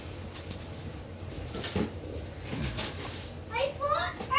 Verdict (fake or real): real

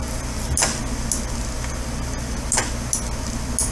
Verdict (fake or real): real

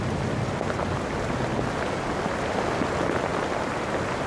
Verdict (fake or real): real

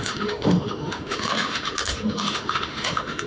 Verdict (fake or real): fake